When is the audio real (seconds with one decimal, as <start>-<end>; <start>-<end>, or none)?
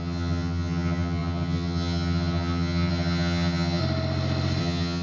3.8-4.6